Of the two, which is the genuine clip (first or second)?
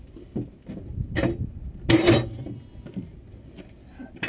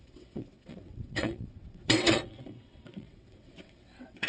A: first